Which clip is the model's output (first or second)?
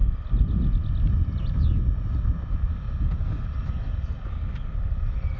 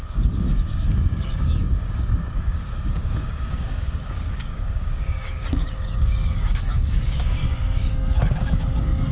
second